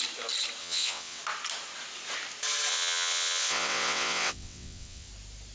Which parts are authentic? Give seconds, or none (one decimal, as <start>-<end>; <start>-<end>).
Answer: 0.0-0.6; 1.2-2.7; 5.1-5.5